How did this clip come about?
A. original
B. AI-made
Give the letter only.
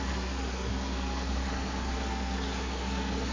B